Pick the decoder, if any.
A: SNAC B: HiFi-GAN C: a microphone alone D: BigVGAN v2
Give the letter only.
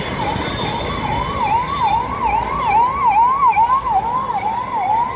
C